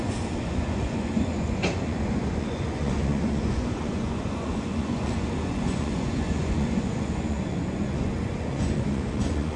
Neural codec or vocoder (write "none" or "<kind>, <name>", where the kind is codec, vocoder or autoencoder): vocoder, Vocos